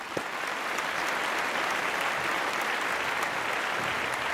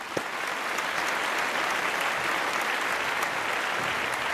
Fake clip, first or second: first